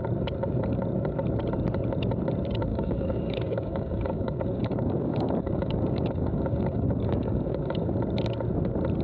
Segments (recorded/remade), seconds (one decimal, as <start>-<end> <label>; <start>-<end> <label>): 0.0-2.7 recorded; 2.7-7.9 remade; 7.9-9.0 recorded